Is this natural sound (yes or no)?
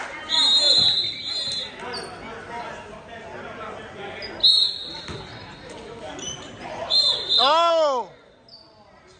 yes